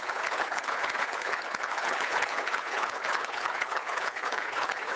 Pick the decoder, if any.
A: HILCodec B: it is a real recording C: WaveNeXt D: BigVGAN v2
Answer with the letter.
A